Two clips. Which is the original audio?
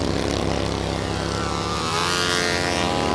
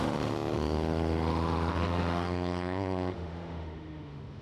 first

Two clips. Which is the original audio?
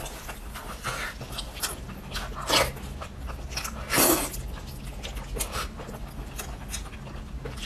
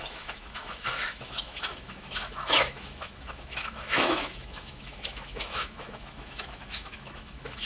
first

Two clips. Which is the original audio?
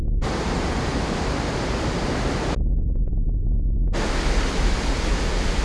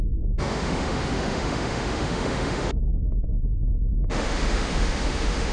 first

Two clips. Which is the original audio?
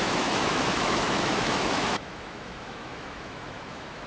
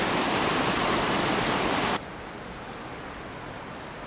second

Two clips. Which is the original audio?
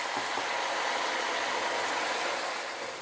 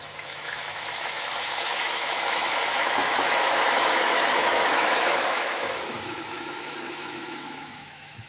first